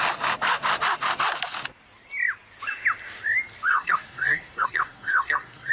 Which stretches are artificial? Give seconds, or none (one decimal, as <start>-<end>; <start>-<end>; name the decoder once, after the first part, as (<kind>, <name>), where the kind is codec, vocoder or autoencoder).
3.7-5.7 (codec, SNAC)